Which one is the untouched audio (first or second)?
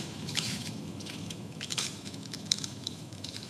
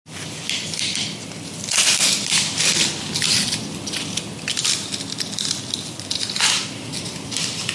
second